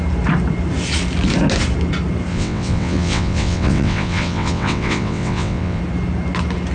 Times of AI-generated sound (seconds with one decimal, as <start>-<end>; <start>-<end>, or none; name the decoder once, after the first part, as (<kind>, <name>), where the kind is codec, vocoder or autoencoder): 2.3-5.8 (vocoder, WaveNeXt)